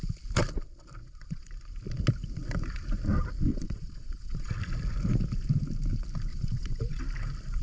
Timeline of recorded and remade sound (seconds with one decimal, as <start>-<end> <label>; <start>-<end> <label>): 0.0-1.0 recorded; 1.0-1.5 remade; 1.5-3.5 recorded; 3.5-4.5 remade; 4.5-6.3 recorded; 6.3-7.0 remade; 7.0-7.6 recorded